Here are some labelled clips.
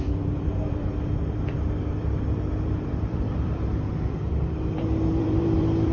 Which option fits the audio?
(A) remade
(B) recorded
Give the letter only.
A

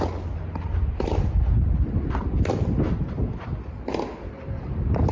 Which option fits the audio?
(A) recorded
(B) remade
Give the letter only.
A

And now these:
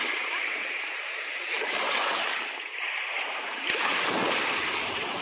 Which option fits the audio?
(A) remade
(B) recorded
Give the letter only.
A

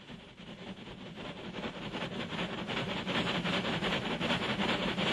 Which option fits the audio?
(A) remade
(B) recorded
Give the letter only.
A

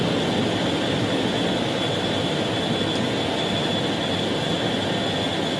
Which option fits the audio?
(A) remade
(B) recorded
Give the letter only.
B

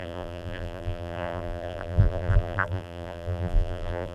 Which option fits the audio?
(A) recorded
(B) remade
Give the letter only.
B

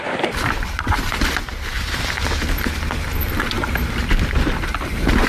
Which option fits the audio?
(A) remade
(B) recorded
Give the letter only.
A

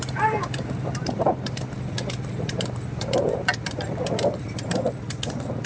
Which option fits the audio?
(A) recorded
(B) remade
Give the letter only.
A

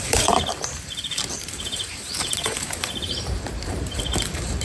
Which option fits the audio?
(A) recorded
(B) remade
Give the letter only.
B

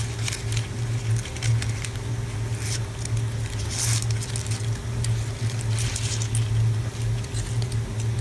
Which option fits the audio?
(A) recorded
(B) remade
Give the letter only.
A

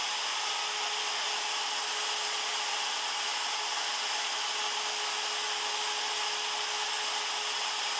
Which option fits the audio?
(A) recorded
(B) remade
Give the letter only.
A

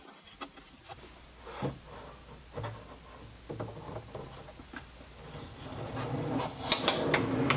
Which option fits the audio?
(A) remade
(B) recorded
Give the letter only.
B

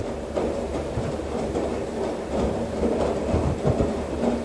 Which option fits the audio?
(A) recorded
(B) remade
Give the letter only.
B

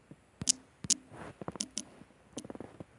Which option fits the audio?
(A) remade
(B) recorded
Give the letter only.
B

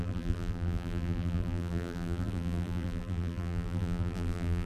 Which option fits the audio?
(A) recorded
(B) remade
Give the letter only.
B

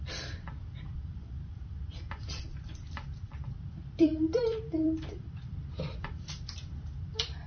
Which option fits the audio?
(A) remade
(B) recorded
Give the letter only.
A